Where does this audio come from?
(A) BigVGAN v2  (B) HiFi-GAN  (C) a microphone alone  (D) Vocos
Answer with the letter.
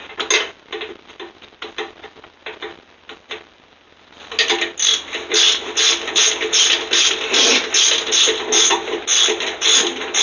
C